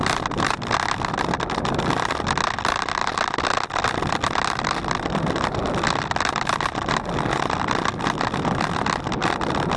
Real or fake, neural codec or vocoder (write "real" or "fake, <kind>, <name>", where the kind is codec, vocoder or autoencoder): real